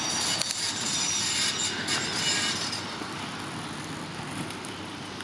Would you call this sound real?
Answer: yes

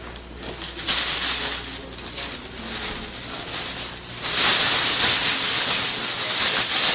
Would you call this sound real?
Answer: yes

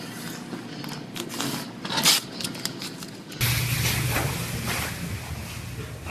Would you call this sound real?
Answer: yes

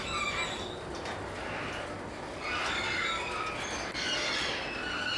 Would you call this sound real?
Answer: yes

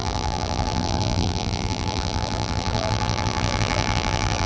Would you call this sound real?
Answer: no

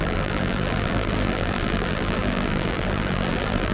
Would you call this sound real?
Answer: no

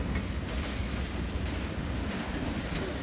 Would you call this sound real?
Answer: yes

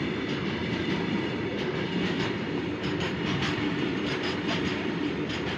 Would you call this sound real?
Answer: no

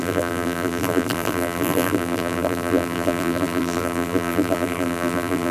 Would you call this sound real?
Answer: no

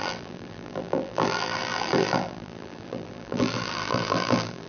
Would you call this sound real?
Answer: no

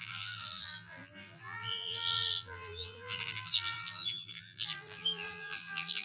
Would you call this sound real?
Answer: no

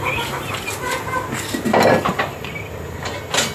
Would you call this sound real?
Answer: yes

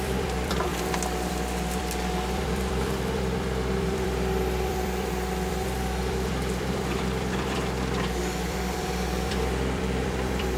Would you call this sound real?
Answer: no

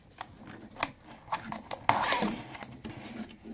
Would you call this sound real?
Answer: yes